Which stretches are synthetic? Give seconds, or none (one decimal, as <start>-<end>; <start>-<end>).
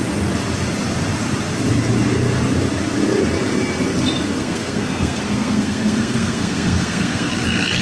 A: 4.4-7.3